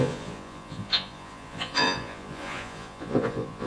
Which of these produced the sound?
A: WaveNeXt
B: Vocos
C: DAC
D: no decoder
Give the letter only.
B